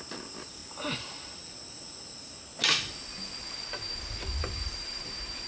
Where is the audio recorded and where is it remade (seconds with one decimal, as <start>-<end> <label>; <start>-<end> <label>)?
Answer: 0.0-0.6 remade; 0.6-2.1 recorded; 2.1-2.5 remade; 2.5-4.4 recorded; 4.4-5.5 remade